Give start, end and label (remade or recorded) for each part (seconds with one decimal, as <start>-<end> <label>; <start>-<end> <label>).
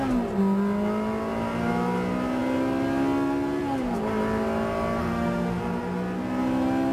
0.0-5.0 recorded; 5.0-5.6 remade; 5.6-6.9 recorded